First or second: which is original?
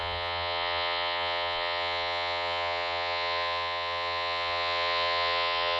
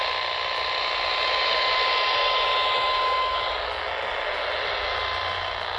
second